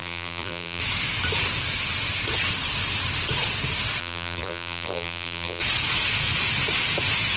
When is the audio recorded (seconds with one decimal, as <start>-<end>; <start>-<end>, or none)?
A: 0.8-4.0; 5.6-7.4